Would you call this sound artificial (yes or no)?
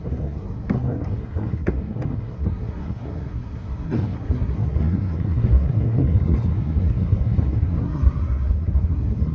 yes